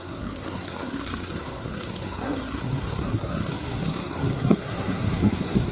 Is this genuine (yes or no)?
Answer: no